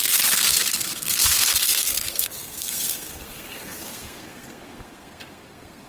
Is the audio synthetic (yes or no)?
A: yes